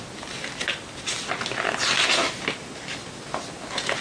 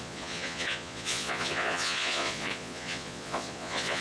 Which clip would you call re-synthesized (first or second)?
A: second